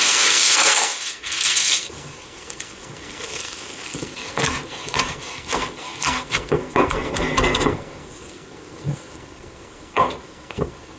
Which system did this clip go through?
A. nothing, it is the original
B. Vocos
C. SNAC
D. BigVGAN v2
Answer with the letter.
C